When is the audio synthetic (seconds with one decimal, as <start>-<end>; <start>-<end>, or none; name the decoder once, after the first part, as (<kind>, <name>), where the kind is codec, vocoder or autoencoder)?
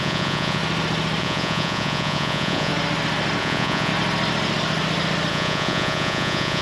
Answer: 0.0-0.6 (vocoder, Vocos); 1.2-2.7; 3.4-3.9; 5.3-6.6